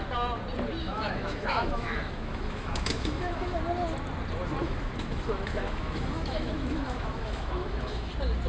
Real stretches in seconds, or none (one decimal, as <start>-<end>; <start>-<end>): 0.0-0.8; 3.6-4.6; 8.1-8.5

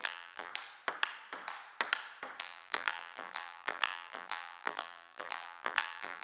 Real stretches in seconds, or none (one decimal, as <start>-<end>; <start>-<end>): 0.5-2.4

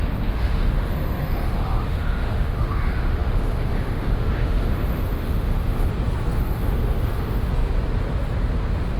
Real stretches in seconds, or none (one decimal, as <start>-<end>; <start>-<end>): 5.9-6.4; 7.5-9.0

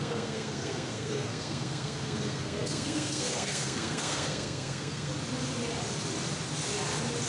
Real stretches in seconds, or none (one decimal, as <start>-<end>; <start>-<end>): 5.1-7.3

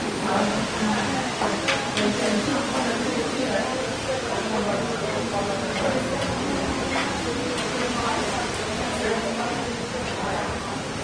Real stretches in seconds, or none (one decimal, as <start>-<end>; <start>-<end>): 0.0-11.0

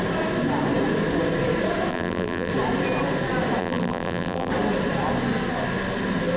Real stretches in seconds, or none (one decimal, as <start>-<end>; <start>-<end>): 0.0-1.9; 2.5-3.6; 4.5-6.4